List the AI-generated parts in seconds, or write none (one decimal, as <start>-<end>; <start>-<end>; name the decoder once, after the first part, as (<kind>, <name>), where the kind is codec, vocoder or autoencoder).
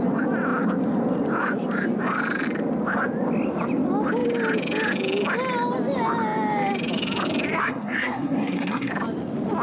7.6-8.9 (codec, SNAC)